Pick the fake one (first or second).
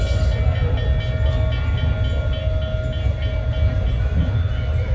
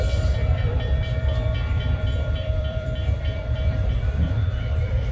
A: second